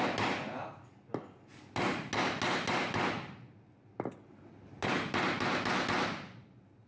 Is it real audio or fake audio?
real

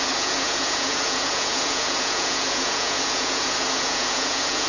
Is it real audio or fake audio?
fake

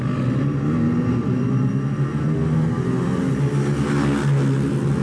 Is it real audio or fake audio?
real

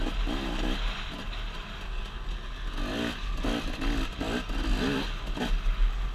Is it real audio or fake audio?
real